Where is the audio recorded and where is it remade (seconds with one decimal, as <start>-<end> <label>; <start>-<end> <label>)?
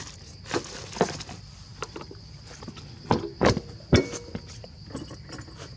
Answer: 0.0-5.8 recorded